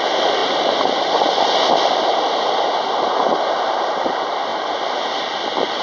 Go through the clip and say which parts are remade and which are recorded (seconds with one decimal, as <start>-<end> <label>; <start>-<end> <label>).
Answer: 0.0-5.8 remade